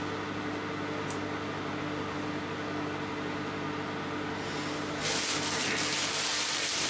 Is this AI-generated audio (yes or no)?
no